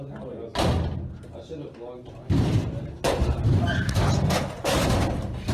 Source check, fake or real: real